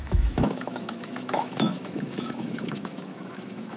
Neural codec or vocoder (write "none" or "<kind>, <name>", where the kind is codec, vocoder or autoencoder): autoencoder, DAC-VAE